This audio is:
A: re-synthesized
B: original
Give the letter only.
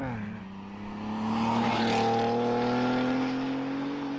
B